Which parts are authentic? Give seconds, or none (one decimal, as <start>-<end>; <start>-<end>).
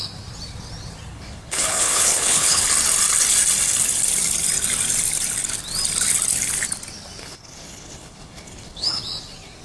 0.0-1.1; 2.6-7.2; 9.0-9.6